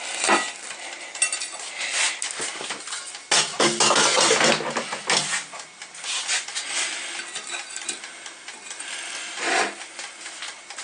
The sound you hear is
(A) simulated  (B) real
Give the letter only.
B